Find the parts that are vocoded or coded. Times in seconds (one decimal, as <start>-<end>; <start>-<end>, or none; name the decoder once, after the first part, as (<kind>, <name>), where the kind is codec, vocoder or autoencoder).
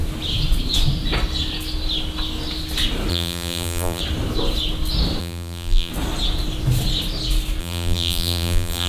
3.1-4.0 (vocoder, BigVGAN v2); 5.2-5.9; 7.6-8.9